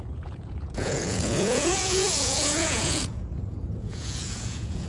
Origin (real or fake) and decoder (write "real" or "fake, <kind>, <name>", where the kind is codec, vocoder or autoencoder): fake, vocoder, Vocos